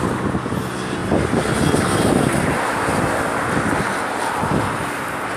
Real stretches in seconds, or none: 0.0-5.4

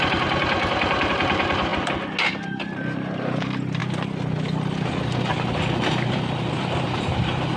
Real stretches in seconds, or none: 1.7-2.3; 3.8-6.1